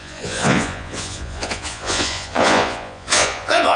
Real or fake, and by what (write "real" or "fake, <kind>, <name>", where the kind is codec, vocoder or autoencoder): fake, vocoder, Vocos